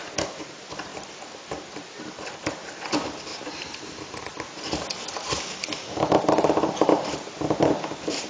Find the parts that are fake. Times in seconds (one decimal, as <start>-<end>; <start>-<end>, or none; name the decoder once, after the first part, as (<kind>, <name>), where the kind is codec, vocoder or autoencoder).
0.0-0.9 (vocoder, BigVGAN v2); 2.1-8.3

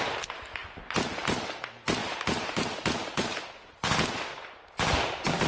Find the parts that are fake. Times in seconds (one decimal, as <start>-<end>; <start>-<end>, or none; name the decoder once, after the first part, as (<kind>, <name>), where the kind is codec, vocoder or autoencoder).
2.0-3.2 (vocoder, BigVGAN v2)

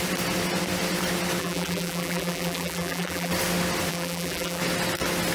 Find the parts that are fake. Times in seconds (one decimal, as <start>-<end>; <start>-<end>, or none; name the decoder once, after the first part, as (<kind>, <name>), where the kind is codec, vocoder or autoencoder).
1.4-3.3 (vocoder, BigVGAN v2); 3.9-4.6

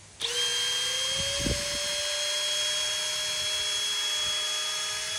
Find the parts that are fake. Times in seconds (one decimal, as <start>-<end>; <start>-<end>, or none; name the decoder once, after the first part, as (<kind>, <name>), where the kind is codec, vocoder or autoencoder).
none

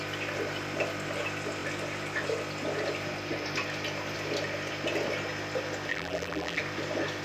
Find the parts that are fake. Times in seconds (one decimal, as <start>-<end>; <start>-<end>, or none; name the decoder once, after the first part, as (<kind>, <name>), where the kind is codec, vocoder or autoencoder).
5.9-6.6 (vocoder, BigVGAN v2)